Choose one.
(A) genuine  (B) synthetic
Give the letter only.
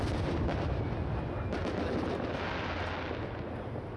A